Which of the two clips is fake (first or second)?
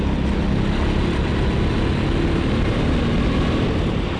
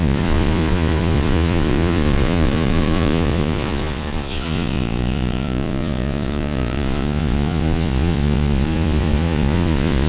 second